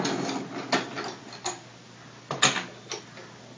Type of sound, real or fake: real